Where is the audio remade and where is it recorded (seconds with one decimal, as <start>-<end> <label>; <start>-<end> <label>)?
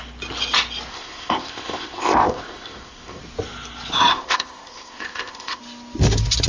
0.0-0.9 recorded; 0.9-3.2 remade; 3.2-4.1 recorded; 4.1-5.6 remade; 5.6-6.5 recorded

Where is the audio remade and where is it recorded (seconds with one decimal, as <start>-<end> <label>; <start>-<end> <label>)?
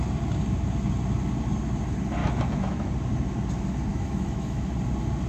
0.0-2.2 recorded; 2.2-2.9 remade; 2.9-3.9 recorded; 3.9-4.7 remade; 4.7-5.3 recorded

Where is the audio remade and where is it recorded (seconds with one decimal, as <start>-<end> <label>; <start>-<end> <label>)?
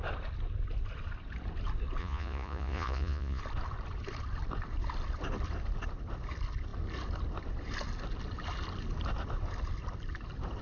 0.0-2.0 recorded; 2.0-3.4 remade; 3.4-10.6 recorded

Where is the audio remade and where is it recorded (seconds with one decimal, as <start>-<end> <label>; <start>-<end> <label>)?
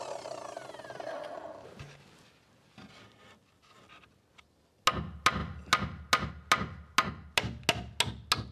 0.0-8.5 recorded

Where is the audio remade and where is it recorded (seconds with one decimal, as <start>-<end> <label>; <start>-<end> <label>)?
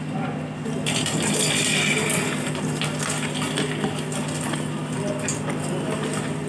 0.0-6.5 recorded